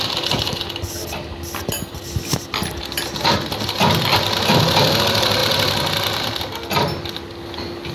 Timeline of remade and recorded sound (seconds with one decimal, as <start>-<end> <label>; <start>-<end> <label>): 0.0-7.9 recorded